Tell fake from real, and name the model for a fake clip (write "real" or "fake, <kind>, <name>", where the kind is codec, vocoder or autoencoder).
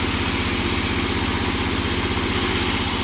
real